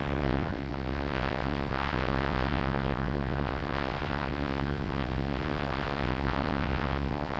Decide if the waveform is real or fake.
fake